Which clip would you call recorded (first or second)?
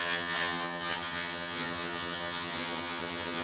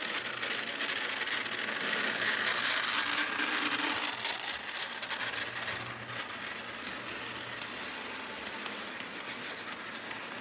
second